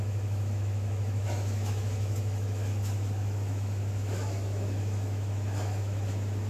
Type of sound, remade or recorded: remade